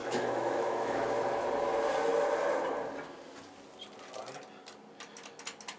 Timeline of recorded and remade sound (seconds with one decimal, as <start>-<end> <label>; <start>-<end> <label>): 0.0-1.1 remade; 1.1-5.8 recorded